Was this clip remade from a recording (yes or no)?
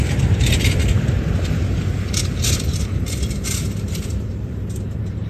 yes